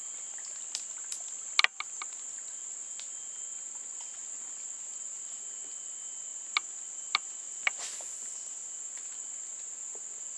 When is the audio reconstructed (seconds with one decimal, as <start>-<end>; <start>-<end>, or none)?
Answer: none